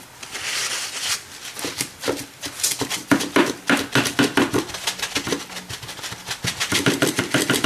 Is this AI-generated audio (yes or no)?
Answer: no